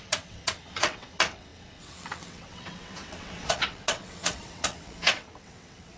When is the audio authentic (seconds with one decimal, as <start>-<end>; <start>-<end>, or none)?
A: none